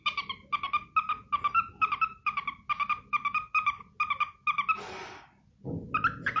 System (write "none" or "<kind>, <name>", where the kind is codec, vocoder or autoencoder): none